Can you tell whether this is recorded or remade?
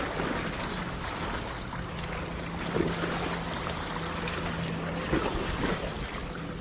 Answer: recorded